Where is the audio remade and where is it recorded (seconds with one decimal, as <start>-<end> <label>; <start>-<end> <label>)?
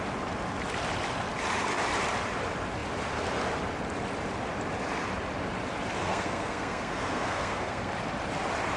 0.0-6.0 recorded; 6.0-7.9 remade; 7.9-8.8 recorded